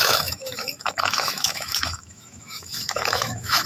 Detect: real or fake fake